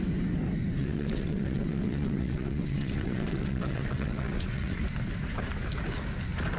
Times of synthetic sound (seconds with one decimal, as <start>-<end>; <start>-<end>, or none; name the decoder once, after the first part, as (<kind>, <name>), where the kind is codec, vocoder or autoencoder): 0.8-4.8 (vocoder, WaveNeXt)